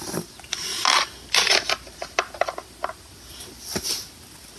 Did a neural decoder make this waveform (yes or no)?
no